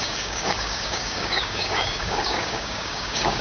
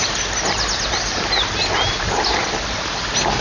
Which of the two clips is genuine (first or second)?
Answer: second